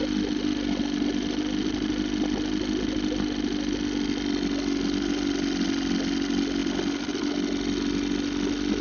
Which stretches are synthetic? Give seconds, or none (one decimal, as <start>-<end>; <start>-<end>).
none